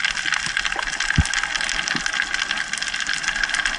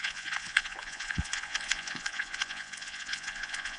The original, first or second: first